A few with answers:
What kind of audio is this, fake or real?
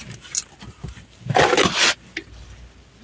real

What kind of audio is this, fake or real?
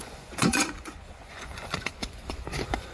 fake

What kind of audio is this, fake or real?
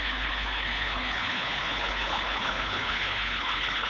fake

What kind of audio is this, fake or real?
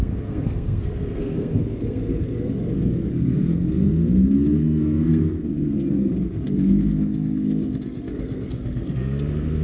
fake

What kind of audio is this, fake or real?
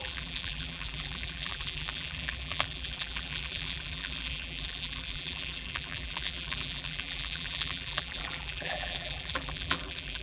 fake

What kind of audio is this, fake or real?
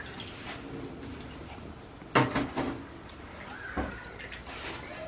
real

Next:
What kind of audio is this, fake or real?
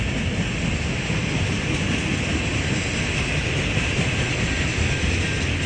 real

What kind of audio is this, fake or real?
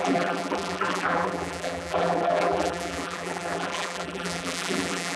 fake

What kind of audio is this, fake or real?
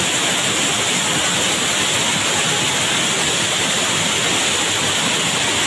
real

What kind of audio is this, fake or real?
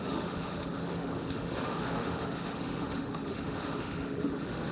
fake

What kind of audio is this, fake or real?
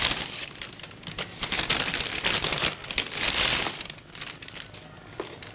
real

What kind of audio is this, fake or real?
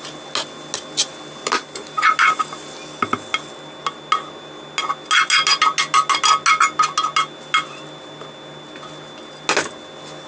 real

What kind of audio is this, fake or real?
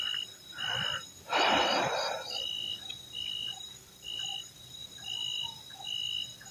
real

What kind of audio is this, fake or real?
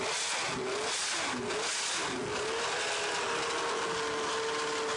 real